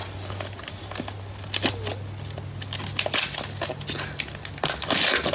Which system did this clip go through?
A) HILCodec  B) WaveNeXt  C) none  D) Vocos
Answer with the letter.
C